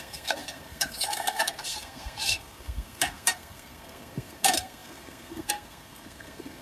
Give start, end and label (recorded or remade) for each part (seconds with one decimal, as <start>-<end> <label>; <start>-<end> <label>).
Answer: 0.0-6.6 remade